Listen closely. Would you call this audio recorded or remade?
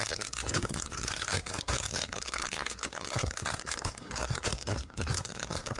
remade